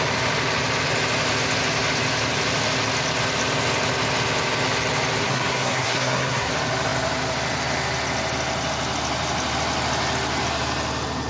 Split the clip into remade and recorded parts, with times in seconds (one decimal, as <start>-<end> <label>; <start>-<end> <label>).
0.0-5.2 recorded; 5.2-6.5 remade; 6.5-11.3 recorded